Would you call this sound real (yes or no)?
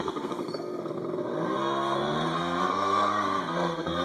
no